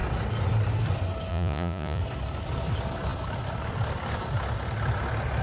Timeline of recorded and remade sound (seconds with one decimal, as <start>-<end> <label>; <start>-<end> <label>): 0.0-1.3 recorded; 1.3-2.0 remade; 2.0-5.4 recorded